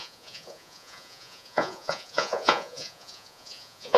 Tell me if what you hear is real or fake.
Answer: fake